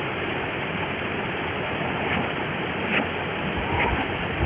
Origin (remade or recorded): recorded